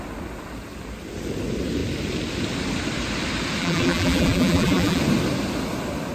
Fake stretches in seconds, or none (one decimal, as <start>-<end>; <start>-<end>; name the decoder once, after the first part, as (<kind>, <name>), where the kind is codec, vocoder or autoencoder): 3.6-5.0 (vocoder, BigVGAN v2)